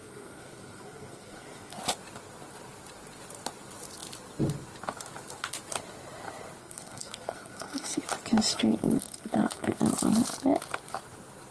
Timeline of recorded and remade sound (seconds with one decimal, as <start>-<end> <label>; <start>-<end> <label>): 0.0-1.8 remade; 1.8-6.6 recorded; 6.6-8.0 remade; 8.0-8.5 recorded; 8.5-9.8 remade; 9.8-11.5 recorded